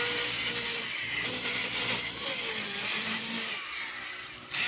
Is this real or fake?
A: real